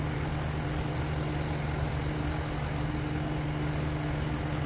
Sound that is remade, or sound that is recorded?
recorded